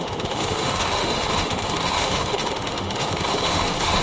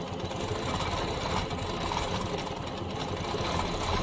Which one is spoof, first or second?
first